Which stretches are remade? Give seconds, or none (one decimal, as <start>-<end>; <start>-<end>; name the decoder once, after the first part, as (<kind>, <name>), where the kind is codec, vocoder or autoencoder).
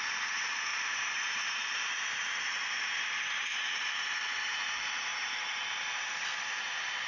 0.7-4.2 (vocoder, BigVGAN v2); 5.1-6.1